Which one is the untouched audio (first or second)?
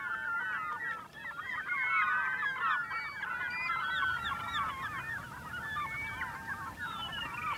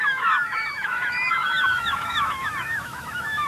first